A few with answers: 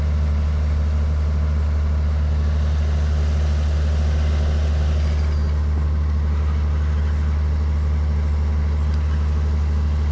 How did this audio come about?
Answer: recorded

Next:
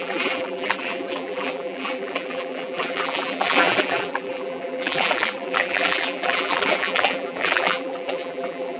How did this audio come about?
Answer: remade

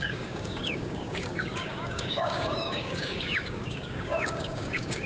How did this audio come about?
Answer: remade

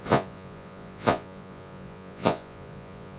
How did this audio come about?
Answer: remade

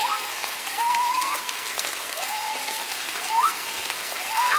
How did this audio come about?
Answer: remade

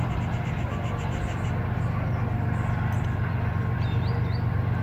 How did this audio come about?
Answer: recorded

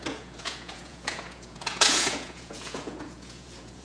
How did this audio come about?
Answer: remade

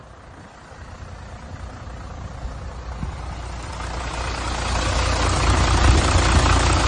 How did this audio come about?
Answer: recorded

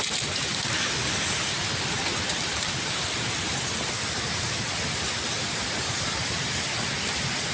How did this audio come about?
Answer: recorded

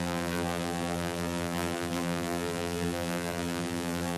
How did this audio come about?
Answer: remade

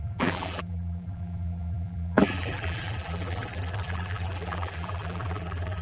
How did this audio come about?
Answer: remade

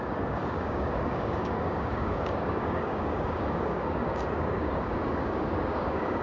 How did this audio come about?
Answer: remade